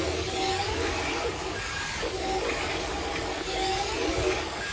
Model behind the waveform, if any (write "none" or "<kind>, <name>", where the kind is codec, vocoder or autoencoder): codec, DAC